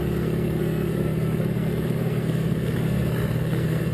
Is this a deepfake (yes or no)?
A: yes